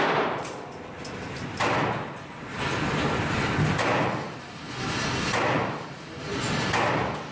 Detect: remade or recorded recorded